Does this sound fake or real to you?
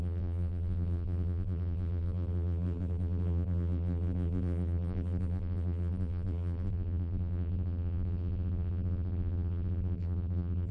fake